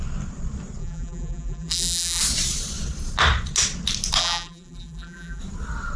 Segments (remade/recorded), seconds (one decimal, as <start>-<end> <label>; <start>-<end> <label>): 0.0-0.8 recorded; 0.8-2.2 remade; 2.2-4.2 recorded; 4.2-5.4 remade; 5.4-6.0 recorded